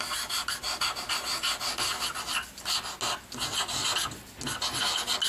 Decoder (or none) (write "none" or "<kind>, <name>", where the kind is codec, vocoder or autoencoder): none